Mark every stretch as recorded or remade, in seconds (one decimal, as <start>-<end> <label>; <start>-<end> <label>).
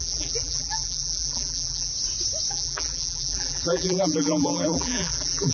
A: 0.0-1.9 remade; 1.9-2.5 recorded; 2.5-5.5 remade